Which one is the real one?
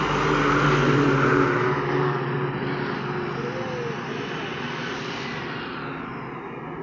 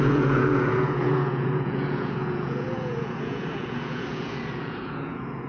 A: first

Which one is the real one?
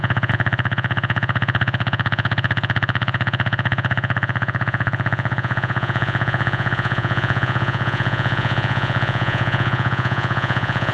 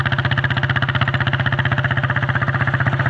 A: second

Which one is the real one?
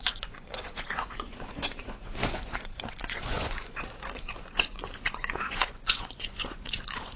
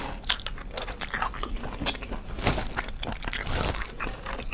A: second